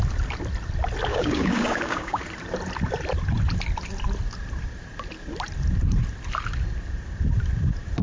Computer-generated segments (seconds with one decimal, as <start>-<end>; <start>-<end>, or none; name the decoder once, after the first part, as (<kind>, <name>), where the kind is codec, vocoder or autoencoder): 1.1-2.2 (codec, DAC)